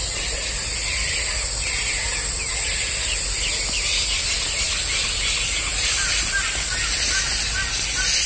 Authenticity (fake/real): real